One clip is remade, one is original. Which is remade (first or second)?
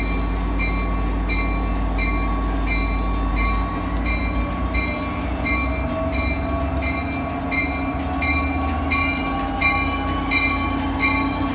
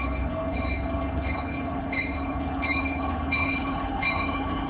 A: second